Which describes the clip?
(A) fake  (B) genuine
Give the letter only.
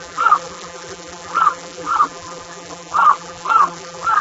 A